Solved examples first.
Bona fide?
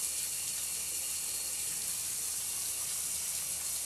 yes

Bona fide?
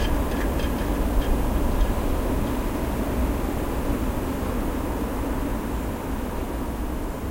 yes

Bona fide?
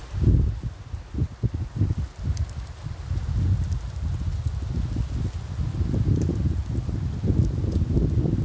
yes